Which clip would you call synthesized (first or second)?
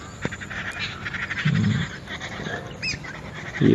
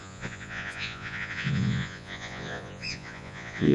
second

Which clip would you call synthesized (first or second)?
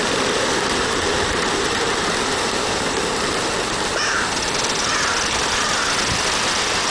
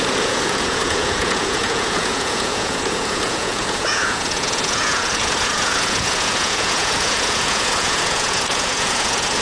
second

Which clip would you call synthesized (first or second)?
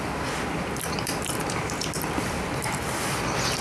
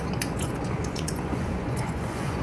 second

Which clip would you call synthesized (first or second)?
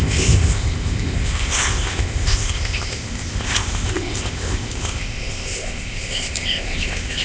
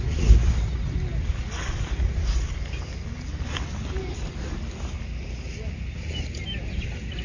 first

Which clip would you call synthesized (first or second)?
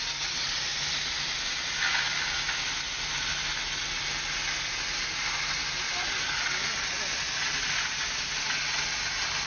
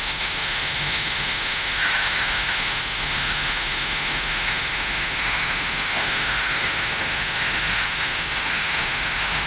second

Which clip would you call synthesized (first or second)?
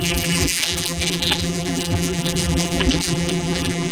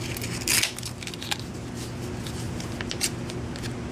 first